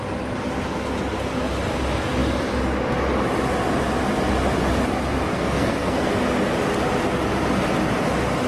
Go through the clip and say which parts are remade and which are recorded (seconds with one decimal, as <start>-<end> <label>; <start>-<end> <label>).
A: 0.0-5.3 recorded; 5.3-6.1 remade; 6.1-8.5 recorded